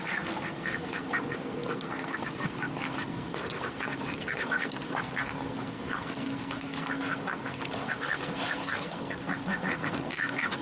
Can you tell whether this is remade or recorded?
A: remade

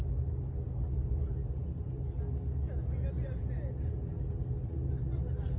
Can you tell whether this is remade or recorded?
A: recorded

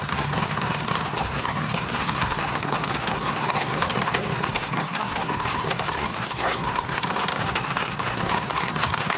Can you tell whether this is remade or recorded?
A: remade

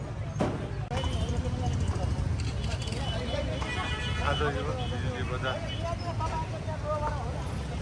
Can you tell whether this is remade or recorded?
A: recorded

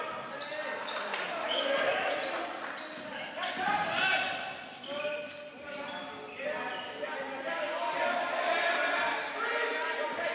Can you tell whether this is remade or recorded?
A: recorded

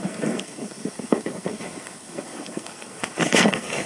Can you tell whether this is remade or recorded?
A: remade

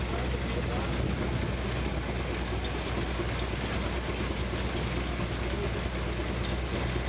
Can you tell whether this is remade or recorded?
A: recorded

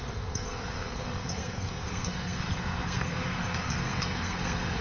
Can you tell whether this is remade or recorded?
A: remade